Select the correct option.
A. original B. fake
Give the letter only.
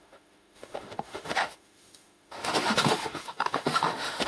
B